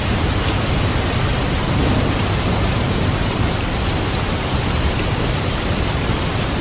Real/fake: fake